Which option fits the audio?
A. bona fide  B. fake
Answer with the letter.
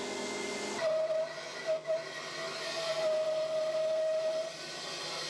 A